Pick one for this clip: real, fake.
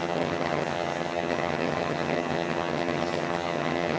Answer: fake